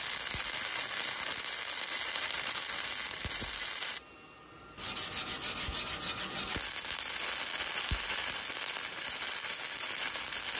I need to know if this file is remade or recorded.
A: recorded